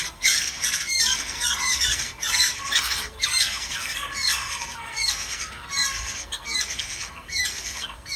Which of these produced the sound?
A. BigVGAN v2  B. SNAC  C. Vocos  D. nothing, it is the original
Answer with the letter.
B